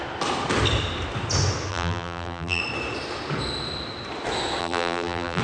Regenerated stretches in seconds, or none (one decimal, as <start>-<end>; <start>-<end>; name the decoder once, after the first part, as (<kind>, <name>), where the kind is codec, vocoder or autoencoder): 1.7-2.6 (vocoder, BigVGAN v2); 4.6-5.4